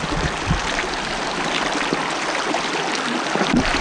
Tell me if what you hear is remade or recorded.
recorded